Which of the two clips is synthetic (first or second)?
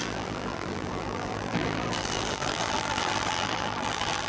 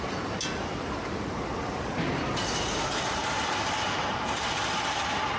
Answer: first